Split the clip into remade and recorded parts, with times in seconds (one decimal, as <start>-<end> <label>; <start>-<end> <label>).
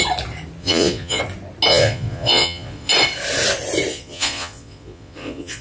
0.0-0.6 recorded; 0.6-1.2 remade; 1.2-1.7 recorded; 1.7-2.9 remade; 2.9-3.9 recorded; 3.9-5.6 remade